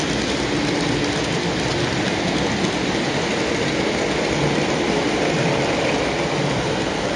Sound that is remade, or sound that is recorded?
recorded